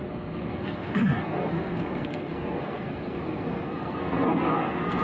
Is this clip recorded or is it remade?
remade